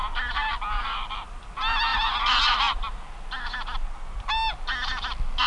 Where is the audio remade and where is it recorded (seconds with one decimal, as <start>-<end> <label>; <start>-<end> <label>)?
0.0-5.5 recorded